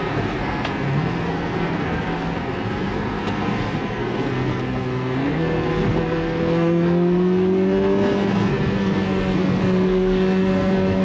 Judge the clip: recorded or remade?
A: remade